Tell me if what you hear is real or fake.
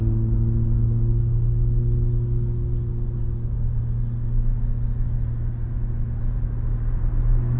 real